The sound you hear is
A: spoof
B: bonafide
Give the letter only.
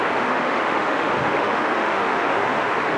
A